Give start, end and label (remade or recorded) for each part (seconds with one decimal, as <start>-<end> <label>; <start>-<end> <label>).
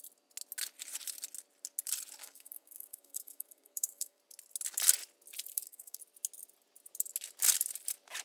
0.0-2.2 recorded; 2.2-4.2 remade; 4.2-5.5 recorded; 5.5-6.0 remade; 6.0-8.2 recorded